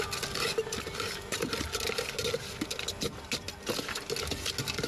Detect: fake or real real